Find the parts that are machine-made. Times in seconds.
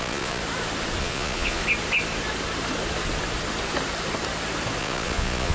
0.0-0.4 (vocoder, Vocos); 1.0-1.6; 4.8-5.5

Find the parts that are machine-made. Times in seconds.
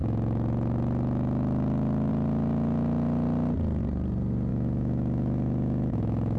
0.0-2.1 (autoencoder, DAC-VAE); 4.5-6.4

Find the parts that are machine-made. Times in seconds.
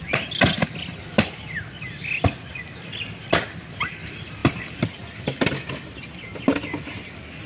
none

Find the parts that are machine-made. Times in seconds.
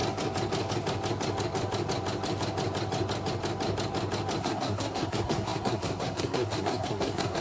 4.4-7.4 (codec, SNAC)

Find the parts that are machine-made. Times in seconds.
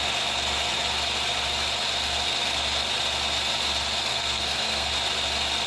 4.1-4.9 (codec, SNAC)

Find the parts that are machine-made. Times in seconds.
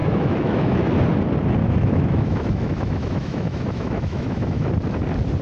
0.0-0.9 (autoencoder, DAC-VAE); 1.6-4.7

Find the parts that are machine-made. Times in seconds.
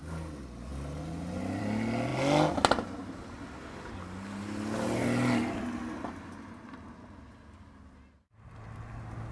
none